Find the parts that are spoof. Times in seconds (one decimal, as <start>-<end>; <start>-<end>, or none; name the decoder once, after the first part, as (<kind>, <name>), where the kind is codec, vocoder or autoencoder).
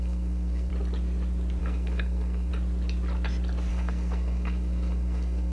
0.0-0.7 (codec, SNAC); 1.6-2.5; 3.7-5.5